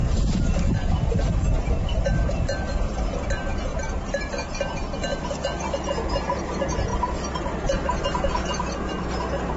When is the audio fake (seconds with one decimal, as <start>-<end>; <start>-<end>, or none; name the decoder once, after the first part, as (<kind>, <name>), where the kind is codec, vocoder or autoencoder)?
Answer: 0.0-3.0 (vocoder, BigVGAN v2); 3.7-4.3